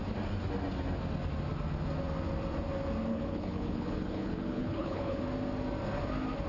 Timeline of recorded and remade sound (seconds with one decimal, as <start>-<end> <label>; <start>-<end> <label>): 0.0-3.1 recorded; 3.1-5.2 remade; 5.2-6.5 recorded